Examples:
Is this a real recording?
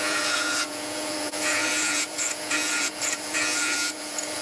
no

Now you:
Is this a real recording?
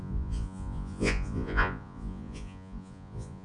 no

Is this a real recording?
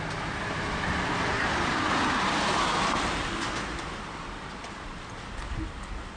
yes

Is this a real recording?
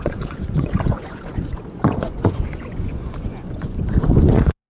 no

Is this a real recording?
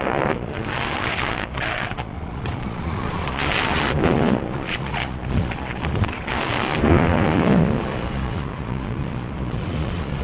no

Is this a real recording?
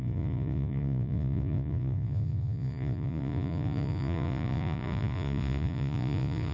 no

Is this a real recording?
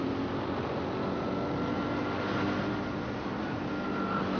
yes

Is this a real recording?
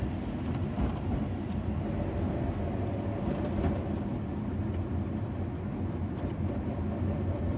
yes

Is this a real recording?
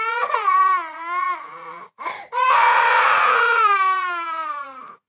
no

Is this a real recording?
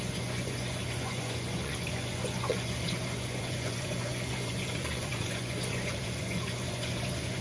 no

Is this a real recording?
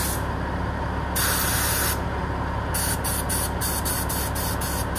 yes